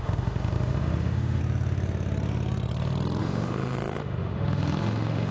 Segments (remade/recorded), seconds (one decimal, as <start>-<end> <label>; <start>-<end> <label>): 0.0-1.4 remade; 1.4-3.2 recorded; 3.2-5.3 remade